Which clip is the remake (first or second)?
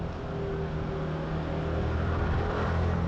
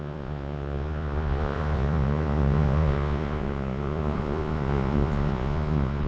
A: second